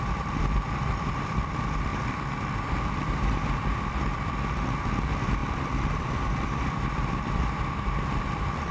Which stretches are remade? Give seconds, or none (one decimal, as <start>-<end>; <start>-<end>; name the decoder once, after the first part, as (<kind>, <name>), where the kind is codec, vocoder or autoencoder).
0.0-1.9 (vocoder, BigVGAN v2); 2.7-8.7